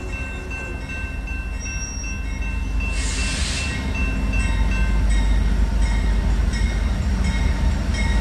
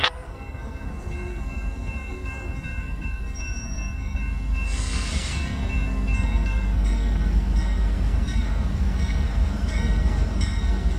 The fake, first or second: second